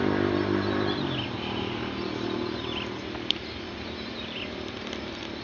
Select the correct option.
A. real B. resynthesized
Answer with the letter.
A